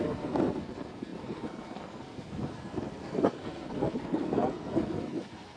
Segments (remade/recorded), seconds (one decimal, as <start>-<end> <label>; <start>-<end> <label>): 0.0-5.6 remade